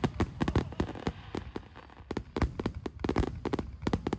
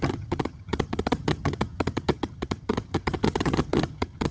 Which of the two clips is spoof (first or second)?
second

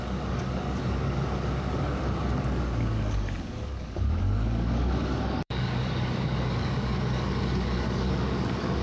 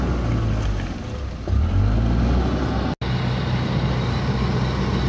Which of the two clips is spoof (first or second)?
first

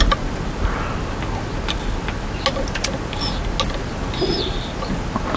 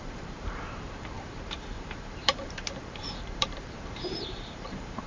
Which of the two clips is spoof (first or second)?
second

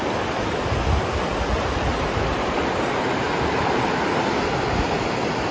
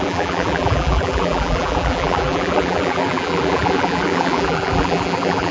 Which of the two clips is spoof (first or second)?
second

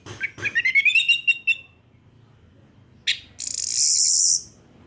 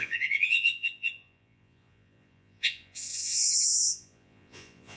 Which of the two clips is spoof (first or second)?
second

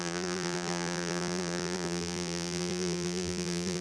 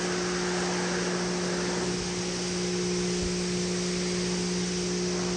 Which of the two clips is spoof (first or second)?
first